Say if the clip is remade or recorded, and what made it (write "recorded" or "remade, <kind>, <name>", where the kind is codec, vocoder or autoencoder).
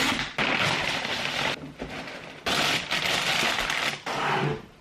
recorded